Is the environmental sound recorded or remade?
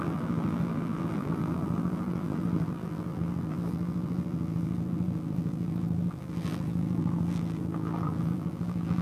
remade